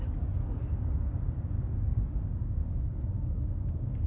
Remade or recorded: remade